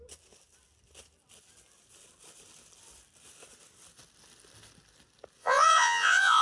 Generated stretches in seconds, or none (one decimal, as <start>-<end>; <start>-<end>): 5.4-6.4